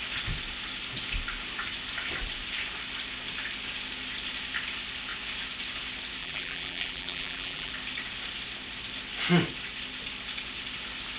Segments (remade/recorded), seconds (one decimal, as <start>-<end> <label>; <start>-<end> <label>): 0.0-6.2 recorded; 6.2-7.7 remade; 7.7-11.2 recorded